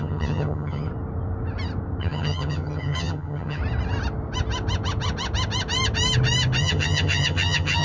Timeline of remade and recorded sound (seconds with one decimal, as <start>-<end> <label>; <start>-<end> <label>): 0.0-0.9 remade; 0.9-2.0 recorded; 2.0-3.6 remade; 3.6-6.6 recorded; 6.6-7.8 remade